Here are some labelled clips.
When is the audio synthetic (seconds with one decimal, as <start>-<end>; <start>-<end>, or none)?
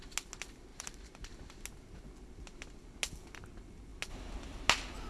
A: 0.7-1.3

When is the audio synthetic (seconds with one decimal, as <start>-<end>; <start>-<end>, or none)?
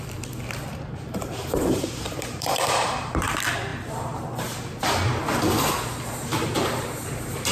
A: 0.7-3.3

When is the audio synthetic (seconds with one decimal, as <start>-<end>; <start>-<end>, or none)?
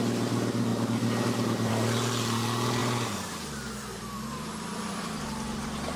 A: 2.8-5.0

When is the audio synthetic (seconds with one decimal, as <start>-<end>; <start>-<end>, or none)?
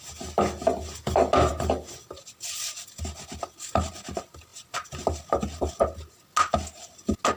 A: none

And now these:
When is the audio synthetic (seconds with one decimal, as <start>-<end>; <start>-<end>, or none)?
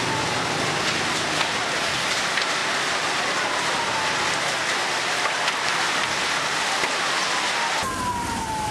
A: 2.6-3.2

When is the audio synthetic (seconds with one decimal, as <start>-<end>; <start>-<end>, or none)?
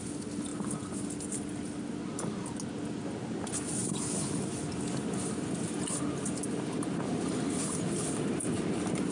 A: none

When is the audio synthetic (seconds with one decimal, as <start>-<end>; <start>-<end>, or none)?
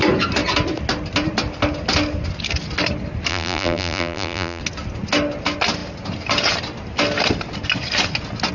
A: 3.3-4.6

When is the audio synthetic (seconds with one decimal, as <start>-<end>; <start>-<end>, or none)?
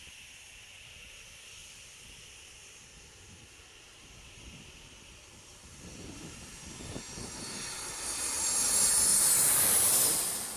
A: 1.6-3.6; 5.5-6.9